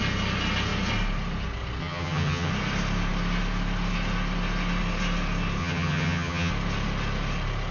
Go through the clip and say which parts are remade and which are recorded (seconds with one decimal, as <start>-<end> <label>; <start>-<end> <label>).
0.0-1.8 recorded; 1.8-2.5 remade; 2.5-5.6 recorded; 5.6-6.5 remade; 6.5-7.7 recorded